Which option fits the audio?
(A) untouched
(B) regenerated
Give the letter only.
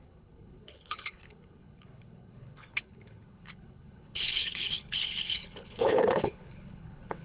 B